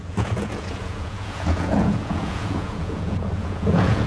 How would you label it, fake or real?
fake